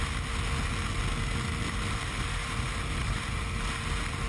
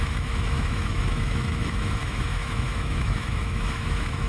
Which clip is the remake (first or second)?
second